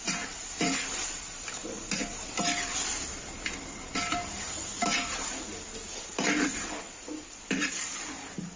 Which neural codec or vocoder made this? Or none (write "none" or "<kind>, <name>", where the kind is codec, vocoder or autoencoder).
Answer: none